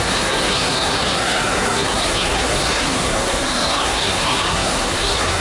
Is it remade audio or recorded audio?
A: remade